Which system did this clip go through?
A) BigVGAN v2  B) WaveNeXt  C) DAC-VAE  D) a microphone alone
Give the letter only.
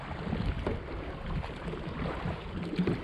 D